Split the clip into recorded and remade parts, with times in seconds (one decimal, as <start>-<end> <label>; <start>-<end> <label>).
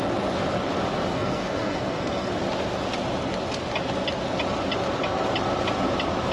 0.0-1.1 recorded; 1.1-2.3 remade; 2.3-6.3 recorded